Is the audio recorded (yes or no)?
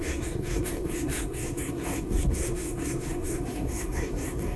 no